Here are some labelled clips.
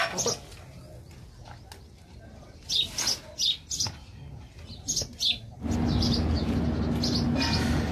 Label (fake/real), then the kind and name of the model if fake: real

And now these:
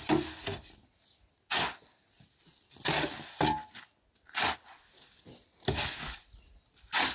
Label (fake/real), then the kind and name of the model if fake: real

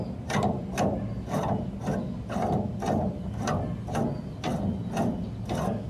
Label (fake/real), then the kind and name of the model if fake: real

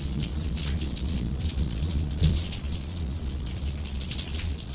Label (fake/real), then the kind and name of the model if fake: fake, vocoder, Vocos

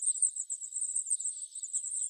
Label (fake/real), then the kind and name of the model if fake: fake, vocoder, BigVGAN v2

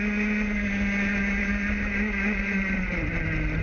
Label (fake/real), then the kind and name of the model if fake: real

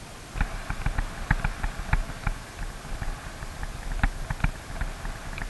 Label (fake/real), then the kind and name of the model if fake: real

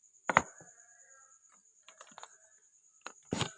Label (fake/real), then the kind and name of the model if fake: real